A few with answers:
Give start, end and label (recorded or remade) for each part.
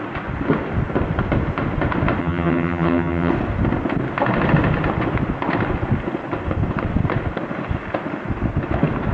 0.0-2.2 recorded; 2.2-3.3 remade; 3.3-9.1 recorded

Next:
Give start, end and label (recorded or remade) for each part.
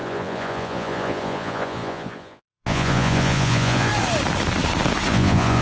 0.0-3.9 remade; 3.9-5.1 recorded; 5.1-5.6 remade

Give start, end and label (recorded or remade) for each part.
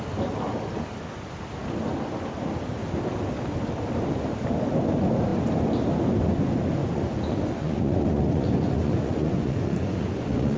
0.0-6.8 recorded; 6.8-10.6 remade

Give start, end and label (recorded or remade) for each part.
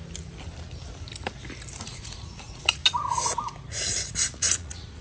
0.0-1.8 recorded; 1.8-2.8 remade; 2.8-3.7 recorded; 3.7-5.0 remade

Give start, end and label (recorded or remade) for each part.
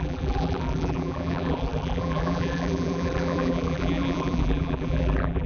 0.0-5.5 remade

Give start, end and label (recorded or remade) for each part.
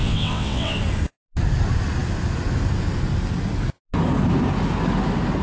0.0-0.8 remade; 0.8-5.4 recorded